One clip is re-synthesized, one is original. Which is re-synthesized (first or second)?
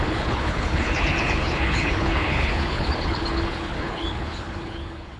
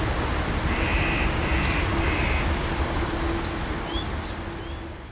first